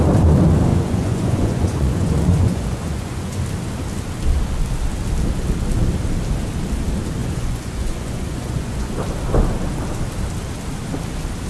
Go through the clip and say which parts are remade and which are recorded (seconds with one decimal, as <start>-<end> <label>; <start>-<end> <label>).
0.0-0.7 recorded; 0.7-3.4 remade; 3.4-7.2 recorded; 7.2-8.9 remade; 8.9-11.5 recorded